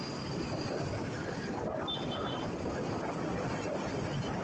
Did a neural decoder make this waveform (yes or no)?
no